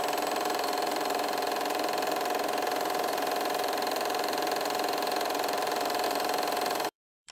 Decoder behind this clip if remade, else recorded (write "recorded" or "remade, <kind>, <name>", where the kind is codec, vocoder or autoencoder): remade, vocoder, BigVGAN v2